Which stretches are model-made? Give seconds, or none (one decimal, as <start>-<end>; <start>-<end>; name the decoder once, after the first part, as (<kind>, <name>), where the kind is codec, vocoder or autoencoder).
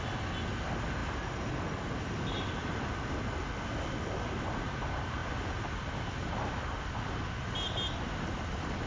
none